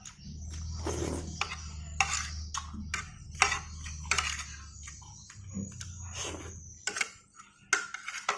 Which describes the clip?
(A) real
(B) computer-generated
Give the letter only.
A